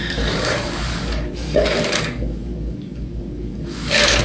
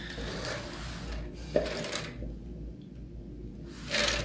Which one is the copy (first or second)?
first